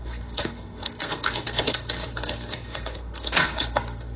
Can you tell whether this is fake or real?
fake